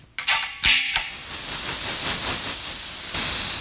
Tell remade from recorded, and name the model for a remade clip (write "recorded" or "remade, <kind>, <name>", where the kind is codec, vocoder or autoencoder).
recorded